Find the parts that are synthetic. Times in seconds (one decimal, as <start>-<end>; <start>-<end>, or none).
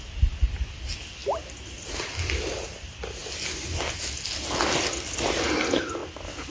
none